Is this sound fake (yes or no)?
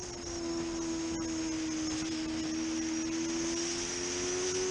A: no